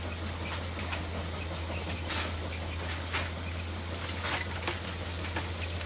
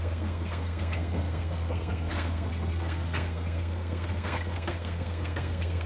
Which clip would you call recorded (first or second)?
first